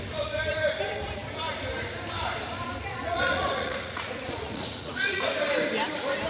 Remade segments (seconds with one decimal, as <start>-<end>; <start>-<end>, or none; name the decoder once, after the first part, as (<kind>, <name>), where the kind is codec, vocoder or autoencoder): 2.9-5.3 (vocoder, Vocos)